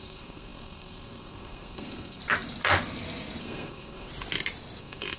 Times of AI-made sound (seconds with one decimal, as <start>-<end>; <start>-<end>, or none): 0.0-2.2; 3.4-4.1; 4.8-5.2